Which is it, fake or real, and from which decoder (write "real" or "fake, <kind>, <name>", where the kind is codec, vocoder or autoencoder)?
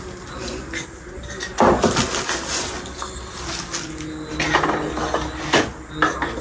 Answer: real